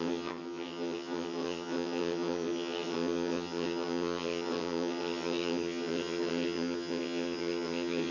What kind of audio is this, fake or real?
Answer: fake